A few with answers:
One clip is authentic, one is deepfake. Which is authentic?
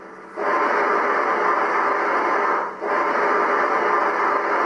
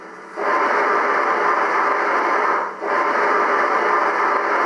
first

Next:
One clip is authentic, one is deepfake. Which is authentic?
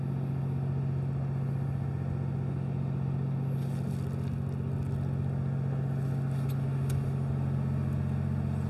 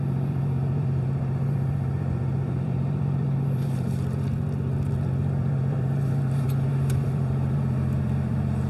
first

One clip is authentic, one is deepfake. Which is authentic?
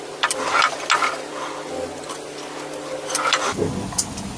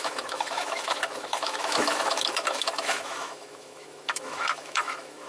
first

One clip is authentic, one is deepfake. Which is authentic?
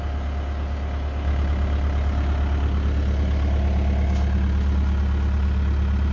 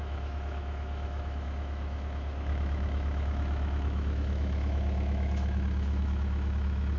first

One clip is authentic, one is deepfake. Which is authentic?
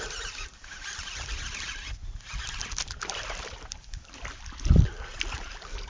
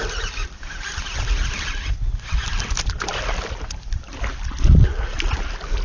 second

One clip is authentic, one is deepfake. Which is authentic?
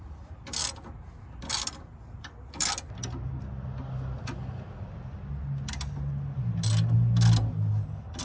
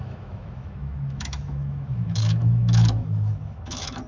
first